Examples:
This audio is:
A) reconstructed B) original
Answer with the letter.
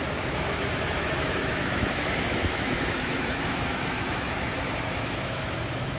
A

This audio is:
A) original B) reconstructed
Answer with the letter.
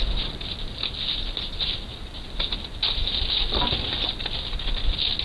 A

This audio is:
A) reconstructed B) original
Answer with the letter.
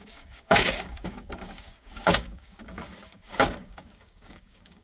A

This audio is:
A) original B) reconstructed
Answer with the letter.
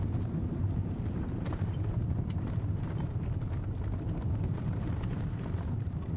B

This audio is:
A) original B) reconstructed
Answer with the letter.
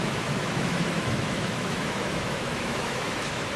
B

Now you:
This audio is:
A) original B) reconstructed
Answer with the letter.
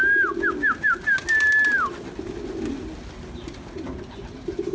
A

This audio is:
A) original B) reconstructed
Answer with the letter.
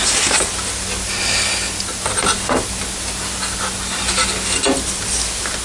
A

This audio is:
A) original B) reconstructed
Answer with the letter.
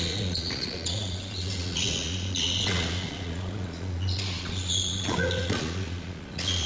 B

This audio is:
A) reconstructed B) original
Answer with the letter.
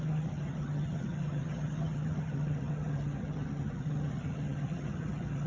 A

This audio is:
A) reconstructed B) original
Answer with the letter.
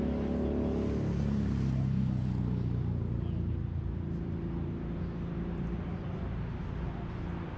B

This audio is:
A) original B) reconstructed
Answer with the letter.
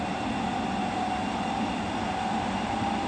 A